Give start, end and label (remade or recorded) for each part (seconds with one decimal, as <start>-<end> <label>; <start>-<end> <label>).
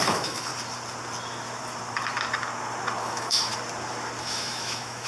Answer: 0.0-0.5 remade; 0.5-3.0 recorded; 3.0-3.5 remade; 3.5-4.2 recorded; 4.2-5.1 remade